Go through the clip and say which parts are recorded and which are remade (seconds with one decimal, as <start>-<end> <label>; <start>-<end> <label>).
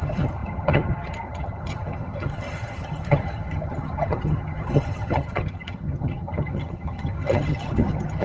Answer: 0.0-8.2 remade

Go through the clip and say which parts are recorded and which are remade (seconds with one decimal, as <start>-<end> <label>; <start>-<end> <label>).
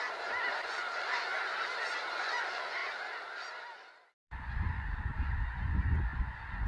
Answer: 0.0-1.3 remade; 1.3-2.1 recorded; 2.1-2.8 remade; 2.8-4.2 recorded; 4.2-6.7 remade